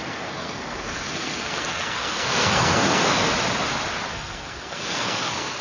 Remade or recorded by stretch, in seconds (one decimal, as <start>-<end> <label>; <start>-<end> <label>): 0.0-3.3 remade; 3.3-4.1 recorded; 4.1-5.6 remade